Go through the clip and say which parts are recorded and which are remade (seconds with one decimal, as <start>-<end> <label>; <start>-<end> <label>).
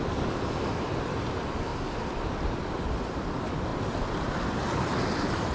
0.0-5.5 recorded